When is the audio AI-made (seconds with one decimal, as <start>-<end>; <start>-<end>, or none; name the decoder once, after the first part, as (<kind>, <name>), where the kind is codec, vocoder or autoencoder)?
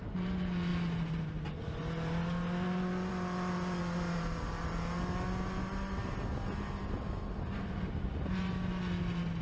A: 6.0-8.5 (vocoder, BigVGAN v2)